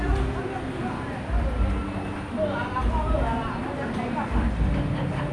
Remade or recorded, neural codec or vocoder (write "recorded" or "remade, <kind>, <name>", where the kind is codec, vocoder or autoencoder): recorded